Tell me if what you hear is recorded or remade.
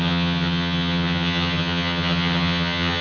remade